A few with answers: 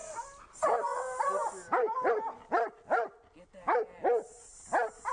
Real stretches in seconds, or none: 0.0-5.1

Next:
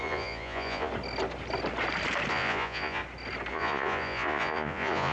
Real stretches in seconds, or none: 0.9-2.3; 3.0-3.5